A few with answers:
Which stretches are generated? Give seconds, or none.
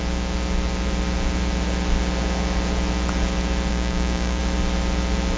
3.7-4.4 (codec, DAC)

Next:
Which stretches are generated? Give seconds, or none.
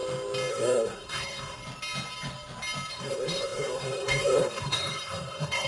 0.5-1.6 (codec, SNAC); 2.9-5.7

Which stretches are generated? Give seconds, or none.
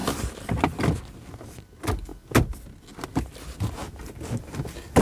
none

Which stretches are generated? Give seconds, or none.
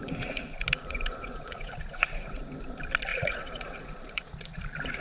0.0-2.4 (vocoder, Vocos); 3.1-4.6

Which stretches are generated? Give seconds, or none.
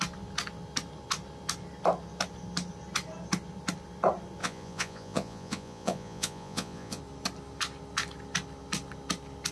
4.4-7.0 (vocoder, Vocos)